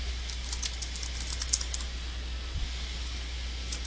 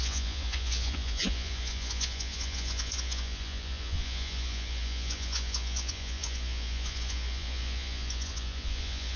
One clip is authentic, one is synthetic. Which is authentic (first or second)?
first